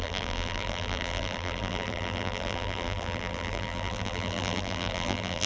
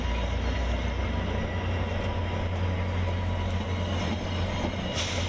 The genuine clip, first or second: second